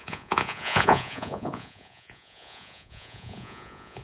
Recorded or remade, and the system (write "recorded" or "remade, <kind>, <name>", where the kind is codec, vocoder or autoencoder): remade, vocoder, Vocos